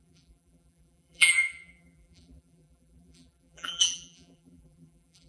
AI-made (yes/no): yes